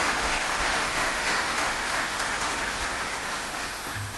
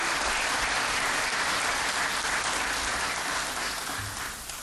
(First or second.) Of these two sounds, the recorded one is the second